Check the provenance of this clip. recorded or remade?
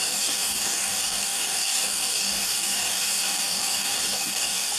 remade